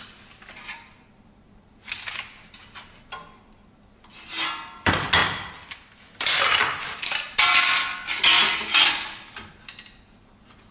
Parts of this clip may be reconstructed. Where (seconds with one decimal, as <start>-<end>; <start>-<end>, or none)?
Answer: none